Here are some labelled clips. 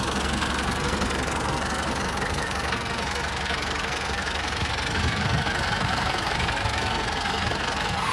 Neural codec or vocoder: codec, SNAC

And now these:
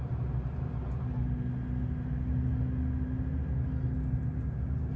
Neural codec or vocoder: none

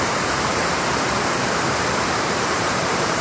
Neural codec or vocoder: vocoder, BigVGAN v2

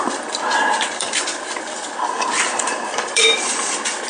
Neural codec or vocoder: vocoder, BigVGAN v2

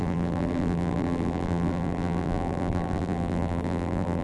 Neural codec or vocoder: vocoder, BigVGAN v2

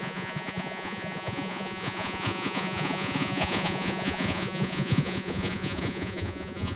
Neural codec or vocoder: vocoder, Vocos